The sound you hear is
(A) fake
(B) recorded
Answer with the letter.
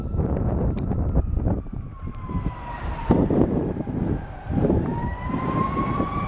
A